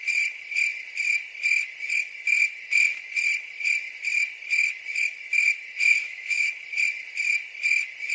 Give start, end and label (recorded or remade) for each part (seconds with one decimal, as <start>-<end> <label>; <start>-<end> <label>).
0.0-6.0 recorded; 6.0-6.5 remade; 6.5-8.1 recorded

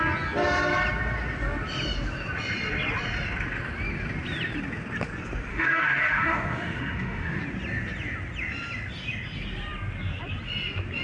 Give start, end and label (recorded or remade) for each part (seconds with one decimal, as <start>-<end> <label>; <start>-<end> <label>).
0.0-5.5 recorded; 5.5-7.4 remade; 7.4-11.0 recorded